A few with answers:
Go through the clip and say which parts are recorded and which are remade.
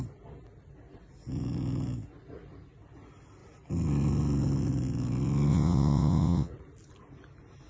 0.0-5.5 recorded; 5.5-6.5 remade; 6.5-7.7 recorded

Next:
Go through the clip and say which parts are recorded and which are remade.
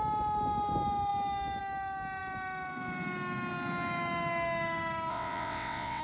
0.0-5.1 recorded; 5.1-6.0 remade